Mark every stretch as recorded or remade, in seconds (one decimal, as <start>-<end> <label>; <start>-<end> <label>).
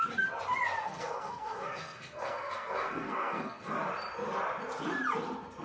0.0-0.8 recorded; 0.8-3.7 remade; 3.7-5.6 recorded